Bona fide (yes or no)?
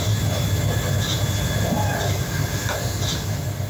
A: yes